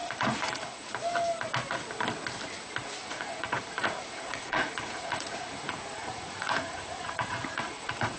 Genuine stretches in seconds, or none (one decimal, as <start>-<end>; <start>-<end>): 0.9-3.0